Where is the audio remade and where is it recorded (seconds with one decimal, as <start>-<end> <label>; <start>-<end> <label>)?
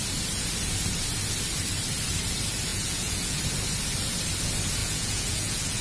0.0-2.7 recorded; 2.7-3.4 remade; 3.4-4.8 recorded; 4.8-5.8 remade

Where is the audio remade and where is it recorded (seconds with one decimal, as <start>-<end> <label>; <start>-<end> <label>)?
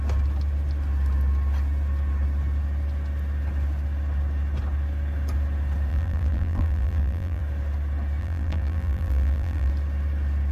0.0-5.9 recorded; 5.9-7.4 remade; 7.4-8.2 recorded; 8.2-9.7 remade; 9.7-10.5 recorded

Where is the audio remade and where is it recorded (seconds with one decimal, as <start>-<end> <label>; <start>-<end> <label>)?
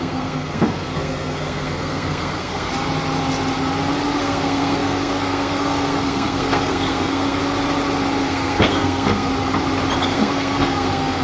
0.0-2.7 remade; 2.7-4.2 recorded; 4.2-7.4 remade; 7.4-8.2 recorded; 8.2-9.3 remade; 9.3-10.0 recorded; 10.0-11.2 remade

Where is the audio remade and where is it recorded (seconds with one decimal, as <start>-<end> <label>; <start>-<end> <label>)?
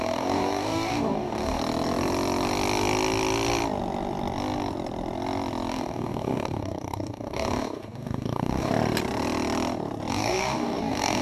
0.0-1.6 remade; 1.6-5.7 recorded; 5.7-8.7 remade; 8.7-10.1 recorded; 10.1-11.2 remade